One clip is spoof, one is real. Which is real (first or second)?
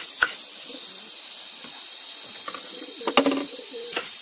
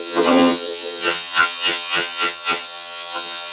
first